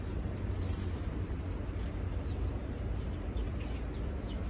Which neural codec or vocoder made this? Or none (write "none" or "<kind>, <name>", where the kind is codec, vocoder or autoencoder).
none